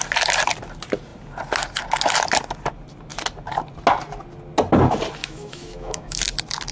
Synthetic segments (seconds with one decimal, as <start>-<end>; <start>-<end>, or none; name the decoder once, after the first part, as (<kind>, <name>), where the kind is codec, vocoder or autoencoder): 5.2-6.2 (autoencoder, DAC-VAE)

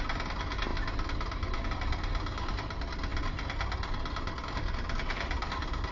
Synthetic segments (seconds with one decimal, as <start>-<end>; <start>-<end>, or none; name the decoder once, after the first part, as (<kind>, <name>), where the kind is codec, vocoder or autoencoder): none

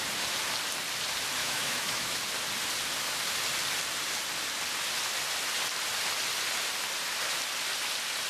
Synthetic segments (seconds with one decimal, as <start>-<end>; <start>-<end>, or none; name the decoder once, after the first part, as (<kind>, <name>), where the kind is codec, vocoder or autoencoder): 1.4-2.2 (autoencoder, DAC-VAE)

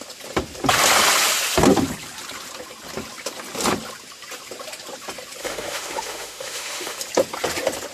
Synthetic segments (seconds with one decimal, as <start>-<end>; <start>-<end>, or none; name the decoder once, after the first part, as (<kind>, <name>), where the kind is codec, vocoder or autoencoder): 5.4-7.0 (autoencoder, DAC-VAE)